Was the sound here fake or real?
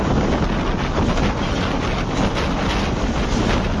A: real